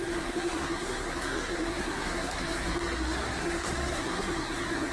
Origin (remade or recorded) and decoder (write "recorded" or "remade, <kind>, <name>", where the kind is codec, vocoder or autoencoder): remade, codec, SNAC